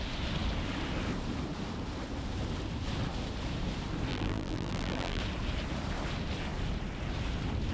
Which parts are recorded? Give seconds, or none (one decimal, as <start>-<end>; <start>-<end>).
0.0-4.1; 5.2-7.7